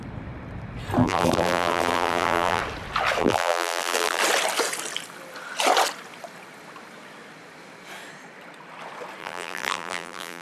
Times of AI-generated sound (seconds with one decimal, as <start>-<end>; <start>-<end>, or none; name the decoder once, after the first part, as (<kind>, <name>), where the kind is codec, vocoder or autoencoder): 1.0-2.6 (vocoder, BigVGAN v2); 3.2-4.2; 9.2-10.4